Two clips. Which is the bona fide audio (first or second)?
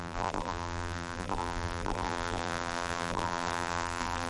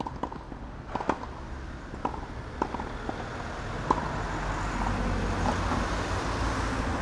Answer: second